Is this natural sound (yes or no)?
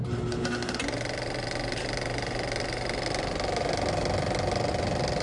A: yes